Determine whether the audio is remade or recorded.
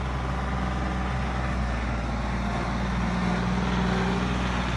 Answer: recorded